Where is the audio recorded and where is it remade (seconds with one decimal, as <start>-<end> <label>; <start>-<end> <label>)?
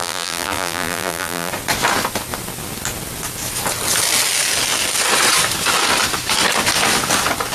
0.0-1.5 remade; 1.5-7.5 recorded